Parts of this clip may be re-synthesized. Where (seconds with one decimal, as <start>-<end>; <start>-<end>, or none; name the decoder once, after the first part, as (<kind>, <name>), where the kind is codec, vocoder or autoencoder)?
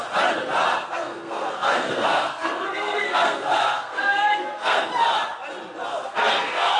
0.8-4.9 (codec, SNAC); 5.9-6.8